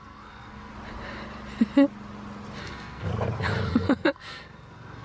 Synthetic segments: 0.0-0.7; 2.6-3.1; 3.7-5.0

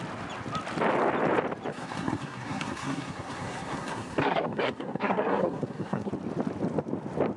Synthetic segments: 1.7-6.1